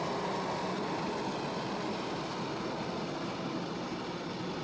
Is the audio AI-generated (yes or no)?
no